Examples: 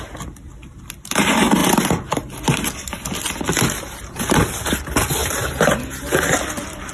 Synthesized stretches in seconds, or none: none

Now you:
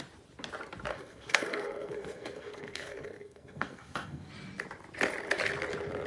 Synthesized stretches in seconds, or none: 0.9-4.3 (codec, SNAC)